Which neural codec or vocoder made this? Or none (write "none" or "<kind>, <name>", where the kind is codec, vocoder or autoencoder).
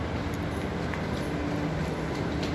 none